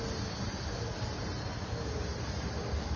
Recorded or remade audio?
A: recorded